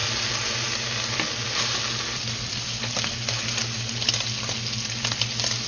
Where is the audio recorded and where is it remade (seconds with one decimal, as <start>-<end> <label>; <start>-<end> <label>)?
0.0-5.7 recorded